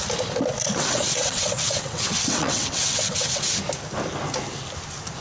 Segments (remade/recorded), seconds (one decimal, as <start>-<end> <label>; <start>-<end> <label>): 0.0-0.6 recorded; 0.6-3.4 remade; 3.4-5.2 recorded